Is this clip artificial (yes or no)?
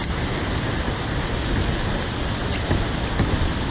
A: no